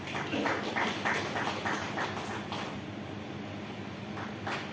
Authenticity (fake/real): real